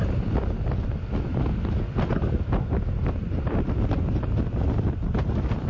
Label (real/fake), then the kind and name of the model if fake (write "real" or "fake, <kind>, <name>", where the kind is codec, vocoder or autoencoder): real